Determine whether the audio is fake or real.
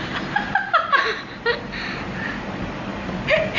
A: real